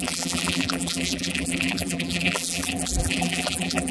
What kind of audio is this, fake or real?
fake